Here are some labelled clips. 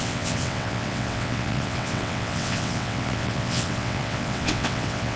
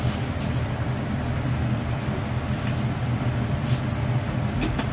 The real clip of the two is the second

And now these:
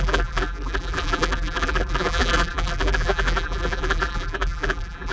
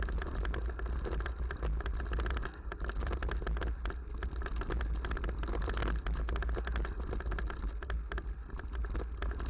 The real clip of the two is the second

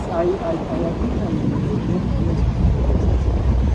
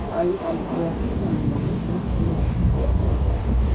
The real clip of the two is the first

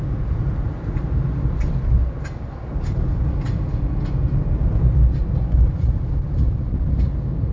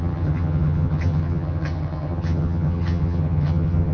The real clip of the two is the first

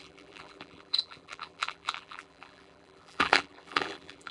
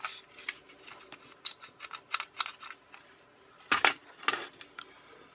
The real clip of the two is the second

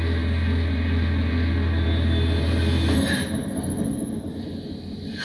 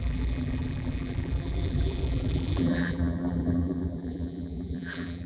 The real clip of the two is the first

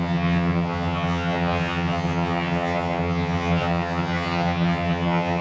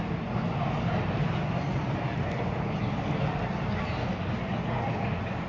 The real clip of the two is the second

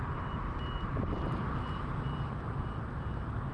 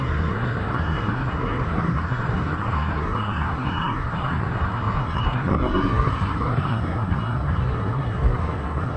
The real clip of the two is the first